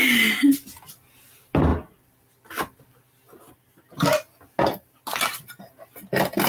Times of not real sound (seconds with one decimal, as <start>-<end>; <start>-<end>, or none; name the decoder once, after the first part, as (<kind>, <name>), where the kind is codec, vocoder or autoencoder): none